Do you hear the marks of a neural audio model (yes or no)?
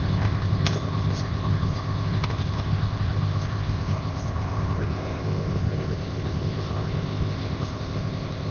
yes